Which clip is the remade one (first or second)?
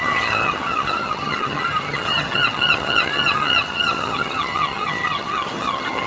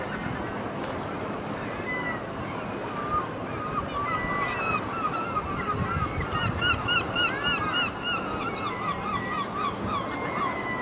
first